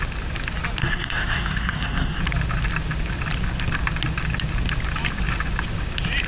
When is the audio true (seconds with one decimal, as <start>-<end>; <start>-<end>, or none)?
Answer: 0.0-0.8; 2.2-6.3